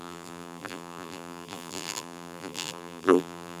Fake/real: fake